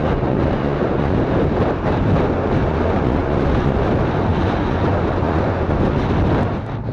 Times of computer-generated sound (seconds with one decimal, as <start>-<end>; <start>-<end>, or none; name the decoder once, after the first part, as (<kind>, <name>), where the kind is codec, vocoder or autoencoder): 0.0-1.2 (vocoder, Vocos); 2.6-3.9; 4.3-6.0